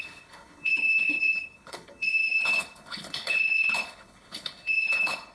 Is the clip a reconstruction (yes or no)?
yes